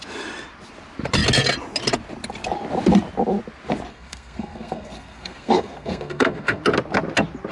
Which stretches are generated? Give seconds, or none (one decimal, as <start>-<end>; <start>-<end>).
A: 3.9-6.6